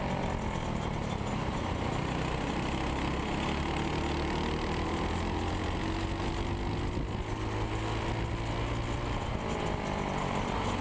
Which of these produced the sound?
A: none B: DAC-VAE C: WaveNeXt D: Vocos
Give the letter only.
A